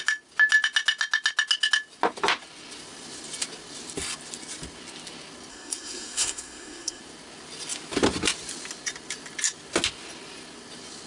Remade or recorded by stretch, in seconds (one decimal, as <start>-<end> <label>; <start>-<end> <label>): 0.0-5.5 recorded; 5.5-7.0 remade; 7.0-11.1 recorded